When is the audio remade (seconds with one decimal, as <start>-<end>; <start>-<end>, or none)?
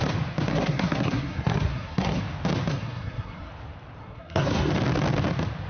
0.5-2.2; 2.7-3.5; 4.0-4.7